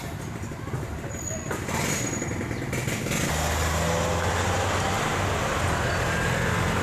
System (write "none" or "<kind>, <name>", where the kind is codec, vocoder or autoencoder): none